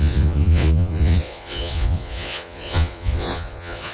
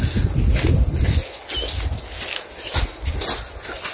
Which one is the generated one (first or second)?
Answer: first